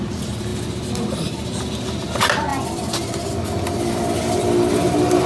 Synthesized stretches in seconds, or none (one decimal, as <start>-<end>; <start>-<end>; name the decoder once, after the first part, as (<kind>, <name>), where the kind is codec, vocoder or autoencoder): none